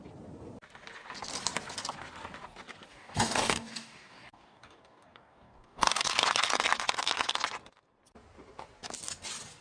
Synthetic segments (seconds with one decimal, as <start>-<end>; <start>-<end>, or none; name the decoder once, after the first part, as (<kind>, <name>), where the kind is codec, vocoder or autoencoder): 2.9-6.1 (codec, DAC)